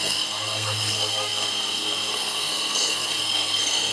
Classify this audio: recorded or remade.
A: remade